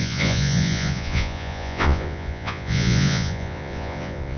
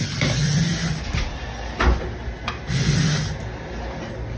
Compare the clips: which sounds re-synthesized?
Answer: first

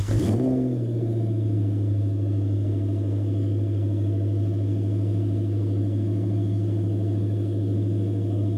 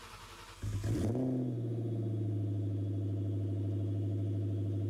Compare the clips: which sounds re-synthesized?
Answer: first